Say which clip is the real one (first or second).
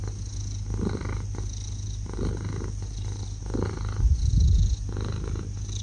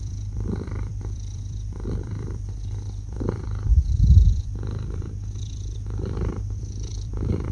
first